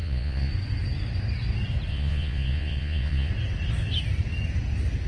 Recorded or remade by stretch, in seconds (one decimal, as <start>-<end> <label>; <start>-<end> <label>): 0.0-0.5 remade; 0.5-1.9 recorded; 1.9-3.3 remade; 3.3-5.1 recorded